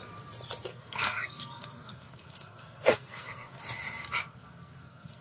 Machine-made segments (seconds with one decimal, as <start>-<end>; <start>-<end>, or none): 0.7-3.6; 4.2-5.2